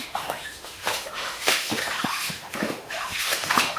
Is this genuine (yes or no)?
no